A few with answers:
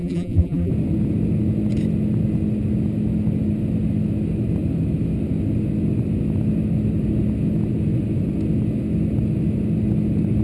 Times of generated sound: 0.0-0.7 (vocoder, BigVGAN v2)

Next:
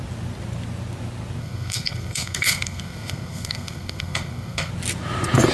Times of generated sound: 1.4-4.7 (codec, SNAC)

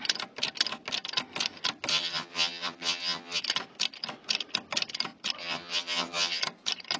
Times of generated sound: 1.9-3.4 (vocoder, HiFi-GAN); 5.4-6.4

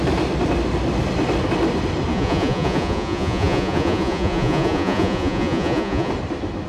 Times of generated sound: 2.1-6.1 (vocoder, Vocos)

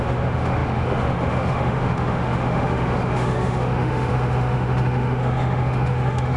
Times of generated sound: 0.0-6.4 (autoencoder, DAC-VAE)

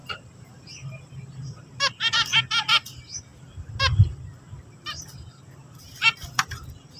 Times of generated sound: 0.0-1.8 (vocoder, BigVGAN v2); 5.6-7.0